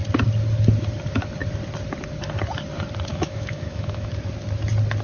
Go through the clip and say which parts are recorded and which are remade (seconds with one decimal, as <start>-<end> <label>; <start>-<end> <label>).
0.0-3.1 recorded; 3.1-4.1 remade; 4.1-5.0 recorded